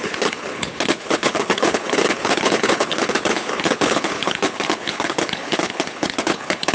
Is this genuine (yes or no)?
no